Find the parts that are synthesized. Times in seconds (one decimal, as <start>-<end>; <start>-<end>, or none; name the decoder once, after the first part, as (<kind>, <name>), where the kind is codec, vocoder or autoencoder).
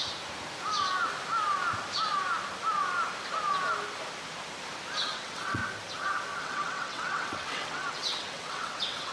5.0-5.6 (vocoder, WaveNeXt); 6.4-9.1